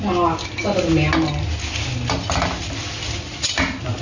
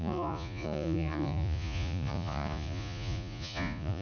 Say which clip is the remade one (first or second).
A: second